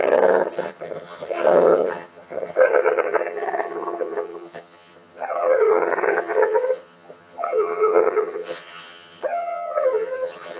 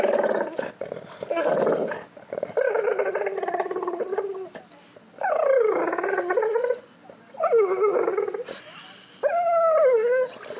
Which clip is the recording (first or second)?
second